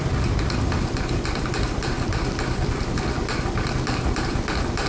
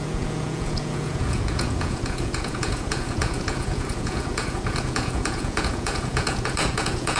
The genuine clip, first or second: first